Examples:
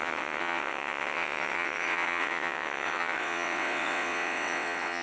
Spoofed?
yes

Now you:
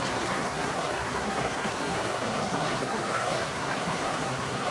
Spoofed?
yes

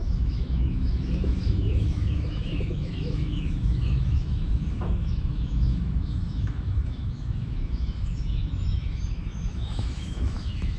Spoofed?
yes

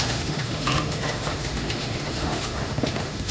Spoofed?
yes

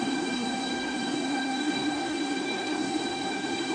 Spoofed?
yes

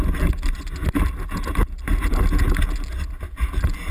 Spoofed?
no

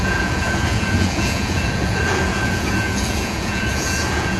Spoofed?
yes